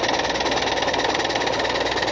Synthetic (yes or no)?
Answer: no